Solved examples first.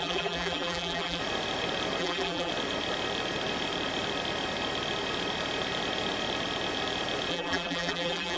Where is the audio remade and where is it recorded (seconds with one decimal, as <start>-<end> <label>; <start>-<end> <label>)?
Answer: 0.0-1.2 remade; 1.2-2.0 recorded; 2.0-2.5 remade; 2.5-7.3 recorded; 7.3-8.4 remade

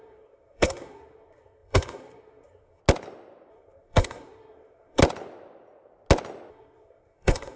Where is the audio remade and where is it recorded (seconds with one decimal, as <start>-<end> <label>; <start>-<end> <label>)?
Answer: 0.0-2.8 remade; 2.8-3.5 recorded; 3.5-5.0 remade; 5.0-6.5 recorded; 6.5-7.6 remade

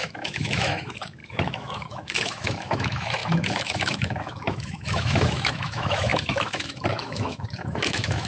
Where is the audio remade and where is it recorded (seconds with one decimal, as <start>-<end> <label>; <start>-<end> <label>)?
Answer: 0.0-8.3 remade

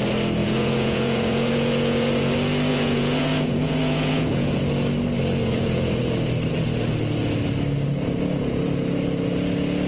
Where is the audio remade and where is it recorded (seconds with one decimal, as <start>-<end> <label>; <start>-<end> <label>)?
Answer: 0.0-0.4 recorded; 0.4-2.3 remade; 2.3-2.7 recorded; 2.7-4.6 remade; 4.6-5.4 recorded; 5.4-6.0 remade; 6.0-9.9 recorded

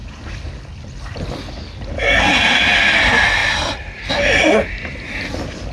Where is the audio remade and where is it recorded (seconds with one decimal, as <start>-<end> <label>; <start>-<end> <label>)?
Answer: 0.0-3.4 recorded; 3.4-4.1 remade; 4.1-5.7 recorded